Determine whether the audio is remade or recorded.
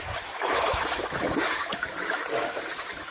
remade